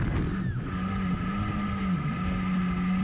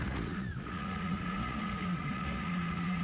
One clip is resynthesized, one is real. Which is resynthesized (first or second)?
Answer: second